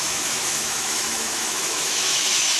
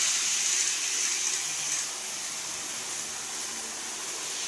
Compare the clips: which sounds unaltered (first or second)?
second